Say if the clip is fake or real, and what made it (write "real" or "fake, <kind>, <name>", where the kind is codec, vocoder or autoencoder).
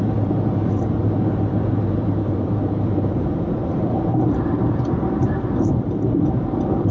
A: fake, vocoder, BigVGAN v2